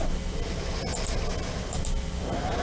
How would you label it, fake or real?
real